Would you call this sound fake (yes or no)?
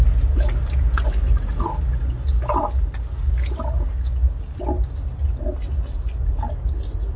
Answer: no